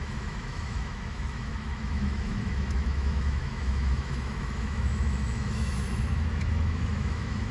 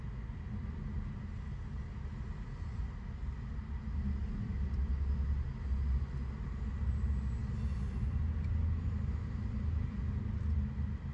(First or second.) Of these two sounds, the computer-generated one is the first